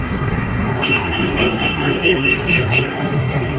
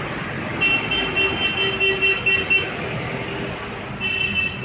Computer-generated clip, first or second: first